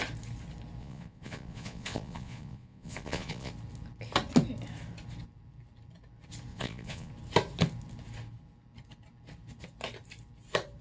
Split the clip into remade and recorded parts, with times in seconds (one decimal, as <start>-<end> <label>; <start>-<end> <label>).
0.0-0.8 recorded; 0.8-3.5 remade; 3.5-6.5 recorded; 6.5-7.1 remade; 7.1-10.8 recorded